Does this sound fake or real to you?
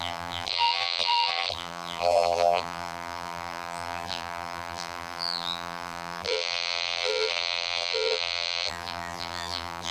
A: fake